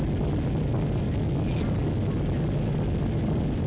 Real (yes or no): yes